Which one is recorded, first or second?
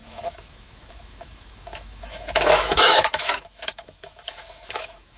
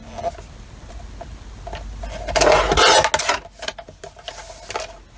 second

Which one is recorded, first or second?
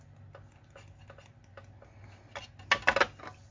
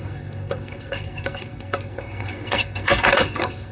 first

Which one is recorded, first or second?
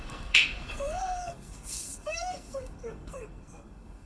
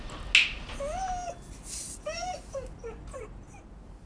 second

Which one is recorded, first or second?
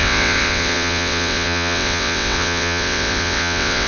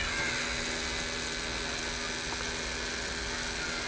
second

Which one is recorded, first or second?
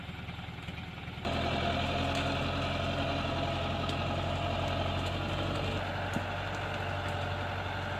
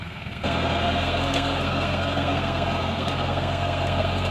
first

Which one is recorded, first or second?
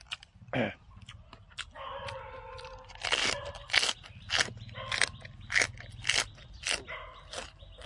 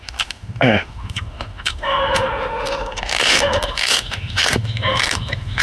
first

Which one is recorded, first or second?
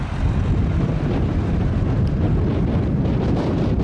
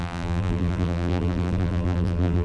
first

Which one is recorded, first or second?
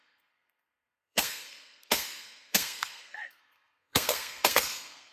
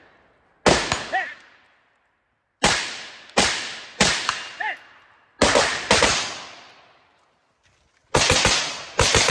second